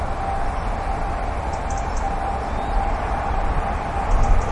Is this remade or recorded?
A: recorded